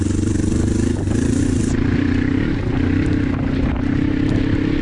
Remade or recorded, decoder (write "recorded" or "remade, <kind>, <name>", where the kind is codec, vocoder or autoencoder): recorded